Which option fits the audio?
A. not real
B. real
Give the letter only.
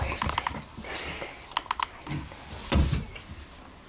B